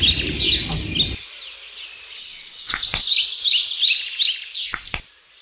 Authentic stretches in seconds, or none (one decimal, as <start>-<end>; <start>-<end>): 0.0-2.2; 2.7-5.4